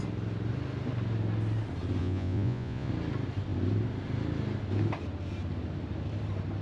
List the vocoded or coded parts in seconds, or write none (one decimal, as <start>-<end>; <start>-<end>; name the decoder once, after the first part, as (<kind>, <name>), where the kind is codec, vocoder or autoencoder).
2.0-2.9 (vocoder, Vocos)